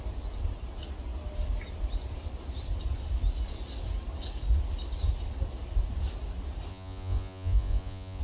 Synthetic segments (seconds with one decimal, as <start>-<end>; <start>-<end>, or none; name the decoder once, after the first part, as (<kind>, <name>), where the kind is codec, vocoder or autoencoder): 6.7-8.2 (vocoder, Vocos)